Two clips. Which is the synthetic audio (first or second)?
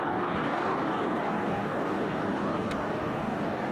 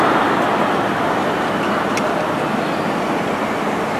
first